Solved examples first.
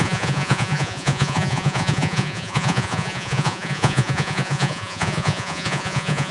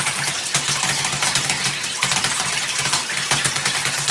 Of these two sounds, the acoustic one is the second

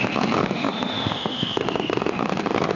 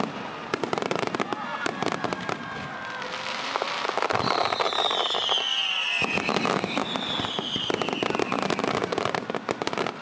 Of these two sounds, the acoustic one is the second